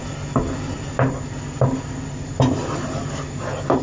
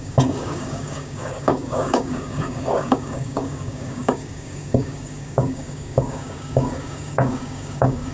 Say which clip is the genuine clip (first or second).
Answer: first